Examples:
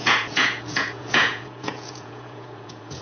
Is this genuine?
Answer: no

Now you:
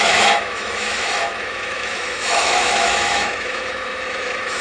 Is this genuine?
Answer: no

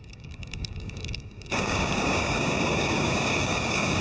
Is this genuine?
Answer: no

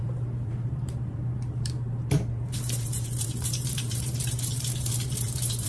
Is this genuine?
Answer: no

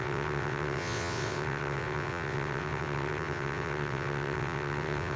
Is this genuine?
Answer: no